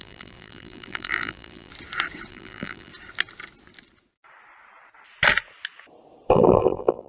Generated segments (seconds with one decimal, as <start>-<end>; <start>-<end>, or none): 0.0-1.7; 2.3-2.9; 6.3-7.1